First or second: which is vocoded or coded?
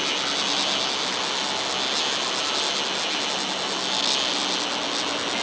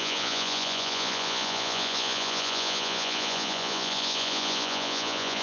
second